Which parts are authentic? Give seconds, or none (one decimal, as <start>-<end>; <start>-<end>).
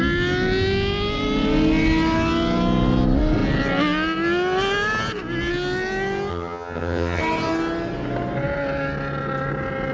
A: 0.0-6.3; 7.2-9.9